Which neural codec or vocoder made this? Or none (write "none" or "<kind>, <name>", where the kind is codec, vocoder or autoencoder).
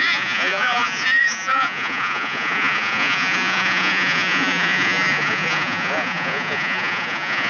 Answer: vocoder, Vocos